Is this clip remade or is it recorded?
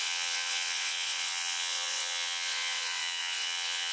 remade